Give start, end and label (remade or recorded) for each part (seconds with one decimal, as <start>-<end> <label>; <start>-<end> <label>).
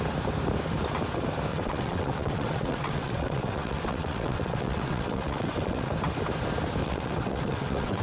0.0-1.5 recorded; 1.5-5.9 remade; 5.9-6.8 recorded; 6.8-8.0 remade